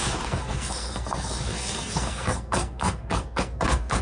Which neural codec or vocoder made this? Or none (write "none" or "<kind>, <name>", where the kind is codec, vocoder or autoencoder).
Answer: codec, SNAC